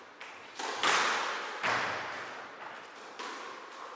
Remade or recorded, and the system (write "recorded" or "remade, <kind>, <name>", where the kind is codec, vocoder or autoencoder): recorded